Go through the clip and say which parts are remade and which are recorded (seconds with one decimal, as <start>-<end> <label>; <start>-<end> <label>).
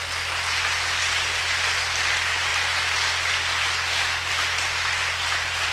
0.0-5.7 recorded